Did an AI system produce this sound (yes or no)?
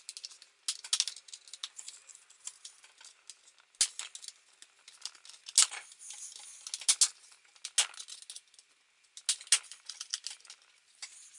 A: no